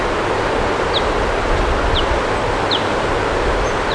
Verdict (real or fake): real